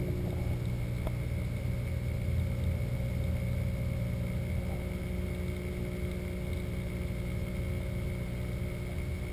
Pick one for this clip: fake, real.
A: real